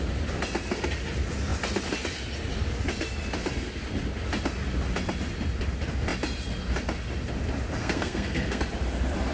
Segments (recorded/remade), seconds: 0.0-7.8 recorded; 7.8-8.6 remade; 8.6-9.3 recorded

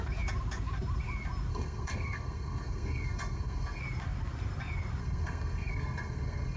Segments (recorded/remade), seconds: 0.0-1.5 recorded; 1.5-3.8 remade; 3.8-5.0 recorded; 5.0-6.6 remade

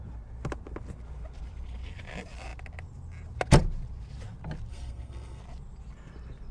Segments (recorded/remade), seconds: 0.0-4.7 recorded; 4.7-5.4 remade; 5.4-6.5 recorded

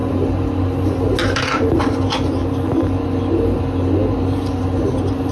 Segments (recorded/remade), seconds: 0.0-5.3 recorded

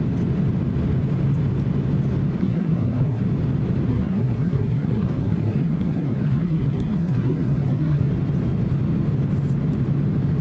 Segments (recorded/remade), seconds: 0.0-2.4 recorded; 2.4-3.2 remade; 3.2-3.9 recorded; 3.9-8.1 remade; 8.1-10.4 recorded

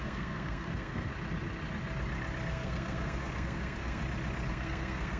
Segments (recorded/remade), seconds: 0.0-1.1 remade; 1.1-2.5 recorded; 2.5-4.0 remade; 4.0-4.5 recorded; 4.5-5.2 remade

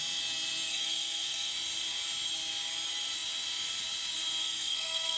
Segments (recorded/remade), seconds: 0.0-0.7 recorded; 0.7-1.5 remade; 1.5-4.4 recorded; 4.4-5.2 remade